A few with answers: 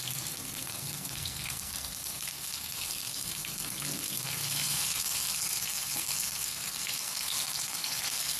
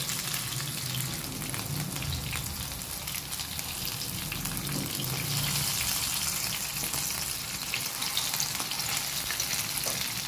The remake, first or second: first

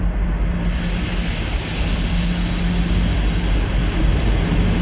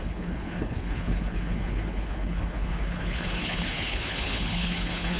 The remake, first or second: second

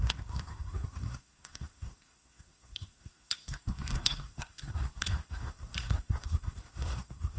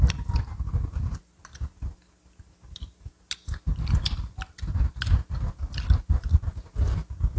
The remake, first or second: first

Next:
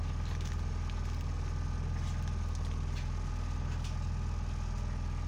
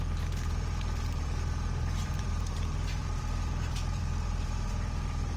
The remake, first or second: second